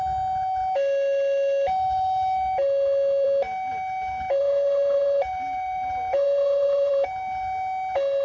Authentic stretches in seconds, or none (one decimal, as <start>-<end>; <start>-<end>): 0.0-4.4; 6.9-8.2